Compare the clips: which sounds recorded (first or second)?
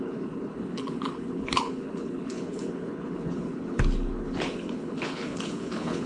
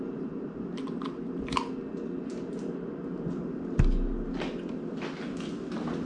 second